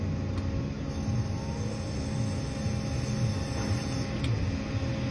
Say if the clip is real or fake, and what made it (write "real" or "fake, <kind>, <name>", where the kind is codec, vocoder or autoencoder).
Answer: real